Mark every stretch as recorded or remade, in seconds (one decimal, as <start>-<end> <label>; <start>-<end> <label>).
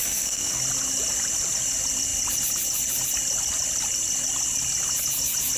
0.0-0.6 remade; 0.6-5.6 recorded